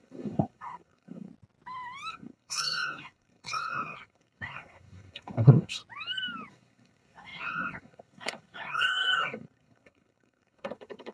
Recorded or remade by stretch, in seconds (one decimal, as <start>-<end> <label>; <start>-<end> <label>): 0.0-1.3 remade; 1.3-2.1 recorded; 2.1-5.8 remade; 5.8-6.5 recorded; 6.5-11.1 remade